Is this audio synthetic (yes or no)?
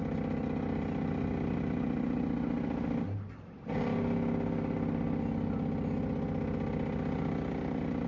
no